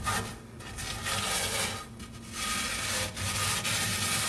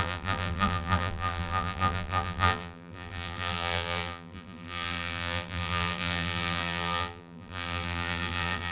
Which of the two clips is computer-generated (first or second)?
second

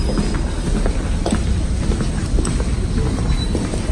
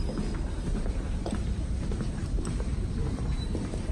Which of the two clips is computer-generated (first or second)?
second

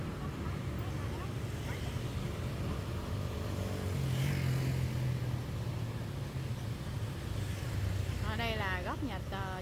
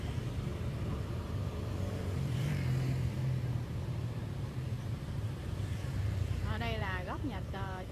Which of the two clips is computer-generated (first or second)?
second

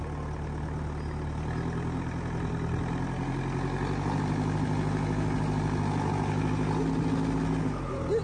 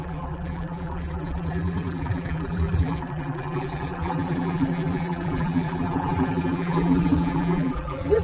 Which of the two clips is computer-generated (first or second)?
second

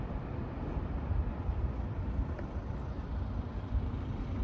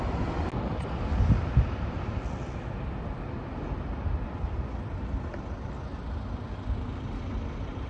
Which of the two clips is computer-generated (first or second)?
first